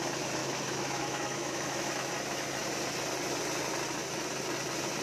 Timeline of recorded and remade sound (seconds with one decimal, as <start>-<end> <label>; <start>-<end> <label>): 0.0-0.4 recorded; 0.4-2.1 remade; 2.1-5.0 recorded